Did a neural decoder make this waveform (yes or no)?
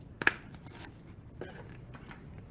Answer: yes